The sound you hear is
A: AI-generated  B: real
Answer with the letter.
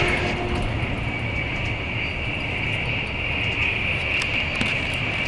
B